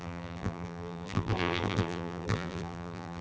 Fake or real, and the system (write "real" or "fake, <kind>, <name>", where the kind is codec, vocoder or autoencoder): fake, vocoder, BigVGAN v2